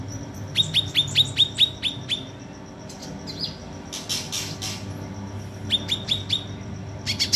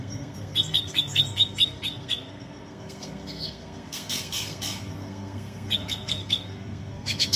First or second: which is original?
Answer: first